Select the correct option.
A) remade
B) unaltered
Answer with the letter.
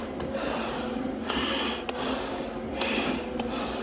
B